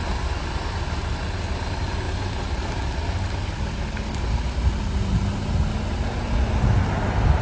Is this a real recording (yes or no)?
yes